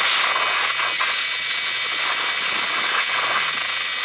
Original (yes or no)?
yes